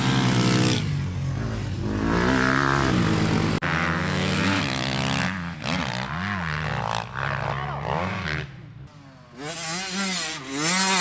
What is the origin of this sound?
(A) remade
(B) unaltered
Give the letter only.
B